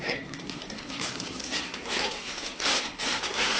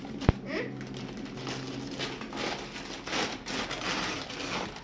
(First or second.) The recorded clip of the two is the second